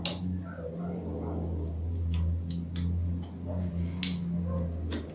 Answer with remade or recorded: recorded